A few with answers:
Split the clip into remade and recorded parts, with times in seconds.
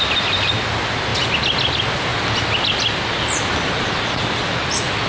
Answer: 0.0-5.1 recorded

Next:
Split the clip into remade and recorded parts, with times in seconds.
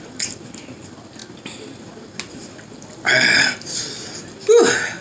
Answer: 0.0-5.0 recorded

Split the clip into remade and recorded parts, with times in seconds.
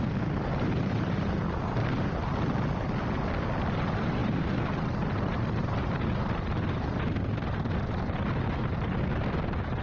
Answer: 0.0-9.8 recorded